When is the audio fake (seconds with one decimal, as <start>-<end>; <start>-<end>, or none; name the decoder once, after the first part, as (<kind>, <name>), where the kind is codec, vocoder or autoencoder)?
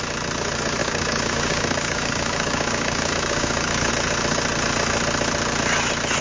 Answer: 0.8-3.9 (codec, DAC)